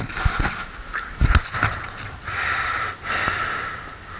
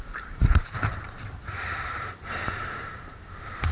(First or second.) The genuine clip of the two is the first